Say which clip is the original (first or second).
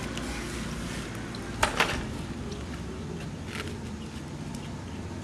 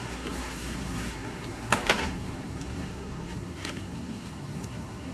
first